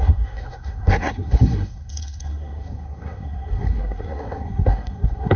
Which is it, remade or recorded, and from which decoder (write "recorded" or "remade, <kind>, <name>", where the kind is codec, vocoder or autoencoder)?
remade, codec, SNAC